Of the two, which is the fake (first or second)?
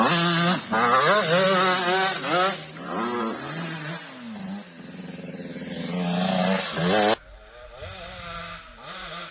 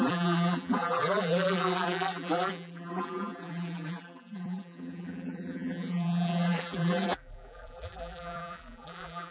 second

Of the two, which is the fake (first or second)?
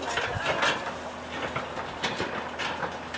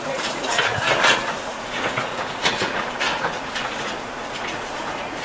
second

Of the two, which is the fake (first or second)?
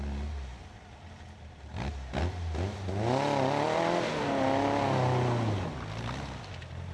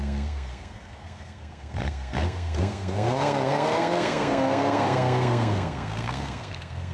second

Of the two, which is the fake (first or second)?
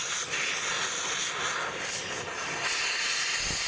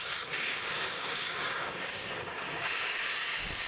second